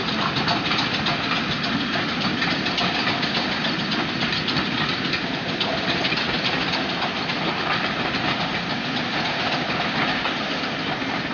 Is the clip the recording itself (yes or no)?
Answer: yes